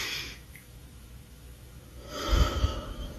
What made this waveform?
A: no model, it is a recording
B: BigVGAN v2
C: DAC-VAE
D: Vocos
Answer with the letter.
C